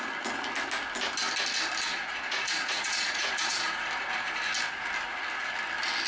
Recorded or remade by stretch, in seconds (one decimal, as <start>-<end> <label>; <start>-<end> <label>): 0.0-1.9 recorded; 1.9-3.9 remade; 3.9-6.1 recorded